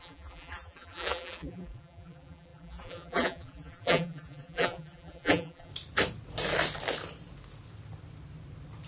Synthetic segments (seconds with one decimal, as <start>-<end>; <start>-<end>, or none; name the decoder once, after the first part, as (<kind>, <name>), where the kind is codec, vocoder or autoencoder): 0.0-5.7 (vocoder, BigVGAN v2)